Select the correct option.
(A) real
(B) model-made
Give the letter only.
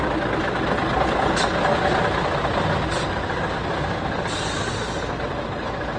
A